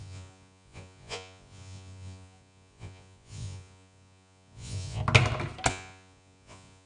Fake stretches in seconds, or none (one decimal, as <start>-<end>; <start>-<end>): 0.0-5.0; 5.7-6.9